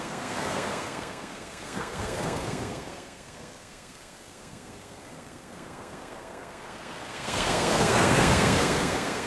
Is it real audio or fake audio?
fake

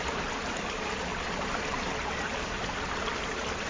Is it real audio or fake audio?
real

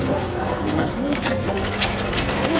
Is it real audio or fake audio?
fake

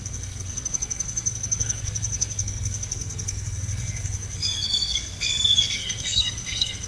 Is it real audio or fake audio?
fake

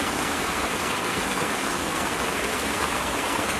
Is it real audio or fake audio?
fake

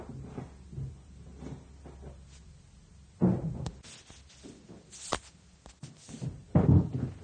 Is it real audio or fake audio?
real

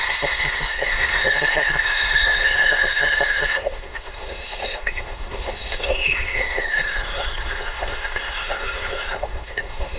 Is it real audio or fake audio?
fake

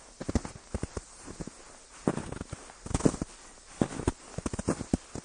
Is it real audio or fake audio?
real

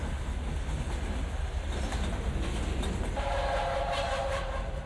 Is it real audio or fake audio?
real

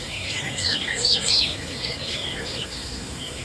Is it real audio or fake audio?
fake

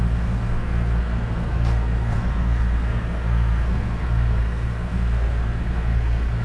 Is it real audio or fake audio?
fake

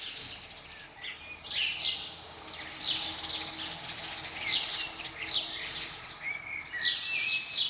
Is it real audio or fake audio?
real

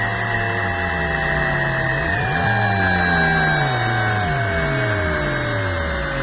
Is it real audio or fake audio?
real